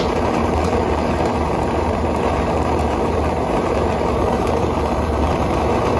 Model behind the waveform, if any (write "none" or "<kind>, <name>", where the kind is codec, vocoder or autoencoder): vocoder, BigVGAN v2